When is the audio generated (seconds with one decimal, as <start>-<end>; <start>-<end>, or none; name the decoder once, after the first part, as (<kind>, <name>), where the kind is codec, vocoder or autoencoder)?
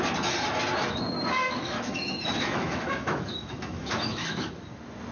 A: 1.4-4.5 (autoencoder, DAC-VAE)